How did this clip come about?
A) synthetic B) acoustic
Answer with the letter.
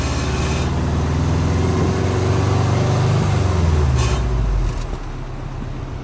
B